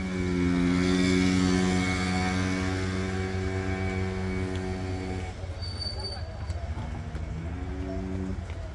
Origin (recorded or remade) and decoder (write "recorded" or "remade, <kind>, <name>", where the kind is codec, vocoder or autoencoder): recorded